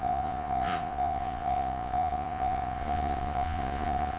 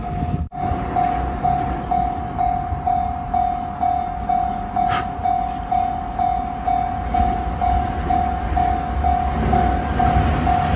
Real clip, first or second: second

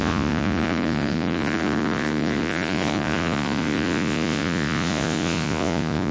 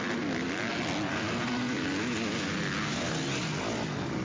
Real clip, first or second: second